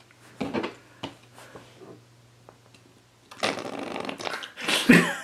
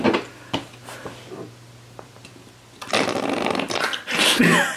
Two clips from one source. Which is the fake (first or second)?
second